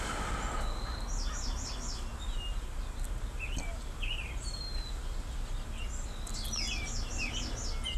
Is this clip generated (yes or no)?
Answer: no